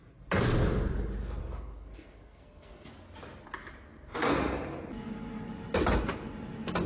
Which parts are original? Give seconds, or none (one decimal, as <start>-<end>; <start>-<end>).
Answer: 0.0-1.4; 2.9-6.9